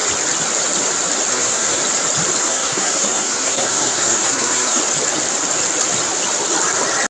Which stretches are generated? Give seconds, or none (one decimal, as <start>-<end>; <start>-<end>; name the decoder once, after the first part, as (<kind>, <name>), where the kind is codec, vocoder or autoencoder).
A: 1.3-1.8 (codec, SNAC); 2.4-4.8